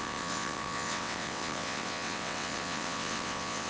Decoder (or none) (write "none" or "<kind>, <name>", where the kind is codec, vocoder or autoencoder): vocoder, WaveNeXt